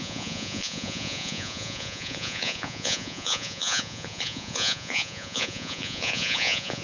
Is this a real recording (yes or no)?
no